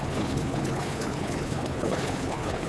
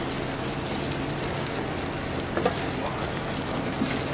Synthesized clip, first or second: first